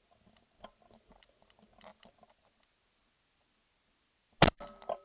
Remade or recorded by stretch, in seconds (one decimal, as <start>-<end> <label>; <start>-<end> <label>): 0.0-5.0 recorded